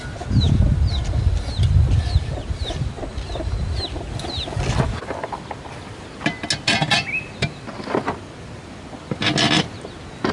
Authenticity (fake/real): real